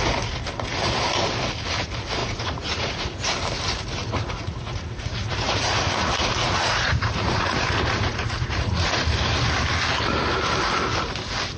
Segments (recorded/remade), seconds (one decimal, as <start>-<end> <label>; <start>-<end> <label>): 0.0-2.2 recorded; 2.2-3.3 remade; 3.3-4.0 recorded; 4.0-9.0 remade; 9.0-11.6 recorded